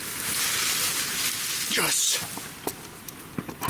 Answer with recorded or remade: recorded